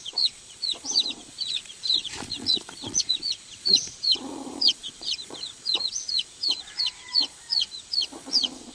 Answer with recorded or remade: remade